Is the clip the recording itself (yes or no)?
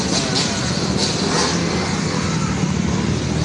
yes